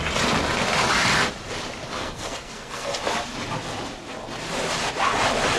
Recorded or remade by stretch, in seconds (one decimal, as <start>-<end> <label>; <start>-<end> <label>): 0.0-2.0 recorded; 2.0-3.0 remade; 3.0-5.6 recorded